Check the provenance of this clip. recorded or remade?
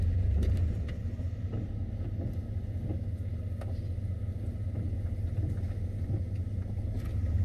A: recorded